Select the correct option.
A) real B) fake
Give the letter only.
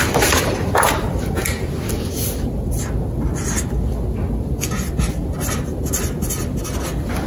A